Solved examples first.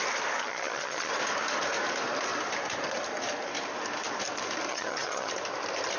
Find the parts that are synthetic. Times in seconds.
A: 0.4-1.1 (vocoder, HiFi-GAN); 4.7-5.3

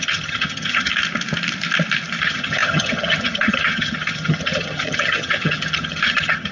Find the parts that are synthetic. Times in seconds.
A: 0.0-0.9 (vocoder, HiFi-GAN); 2.2-6.5

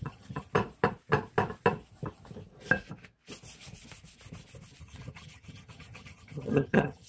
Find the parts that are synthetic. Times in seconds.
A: 0.0-0.5 (vocoder, HiFi-GAN); 4.8-7.1